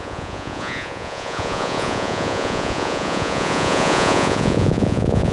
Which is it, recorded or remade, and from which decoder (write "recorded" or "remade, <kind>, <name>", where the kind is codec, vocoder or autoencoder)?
remade, vocoder, Vocos